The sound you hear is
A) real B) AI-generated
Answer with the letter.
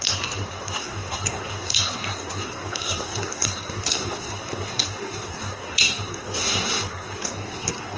B